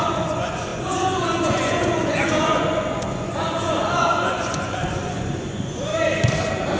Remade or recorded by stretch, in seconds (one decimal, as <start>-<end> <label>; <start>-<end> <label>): 0.0-5.9 remade; 5.9-6.8 recorded